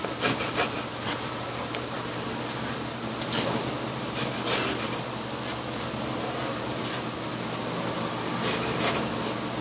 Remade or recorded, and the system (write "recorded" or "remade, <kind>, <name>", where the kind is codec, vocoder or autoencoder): recorded